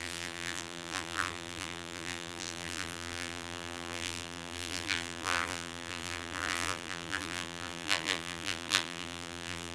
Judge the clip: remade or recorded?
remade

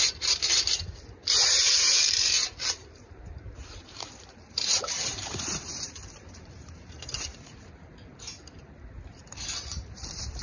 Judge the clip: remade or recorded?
remade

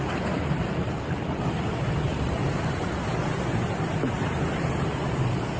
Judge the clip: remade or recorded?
recorded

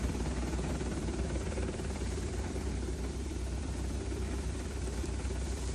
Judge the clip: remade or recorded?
remade